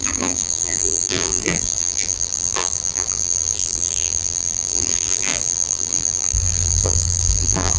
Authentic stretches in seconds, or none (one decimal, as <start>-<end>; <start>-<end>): none